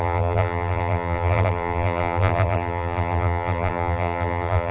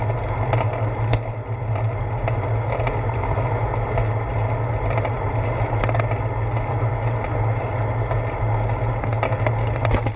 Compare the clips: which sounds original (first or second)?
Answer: second